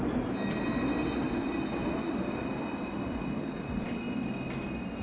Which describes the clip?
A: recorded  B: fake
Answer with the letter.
A